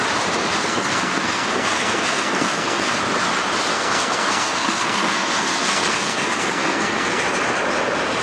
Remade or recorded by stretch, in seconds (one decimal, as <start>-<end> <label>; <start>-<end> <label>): 0.0-0.6 recorded; 0.6-3.0 remade; 3.0-3.7 recorded; 3.7-7.2 remade; 7.2-8.2 recorded